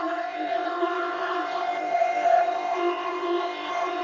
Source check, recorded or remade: remade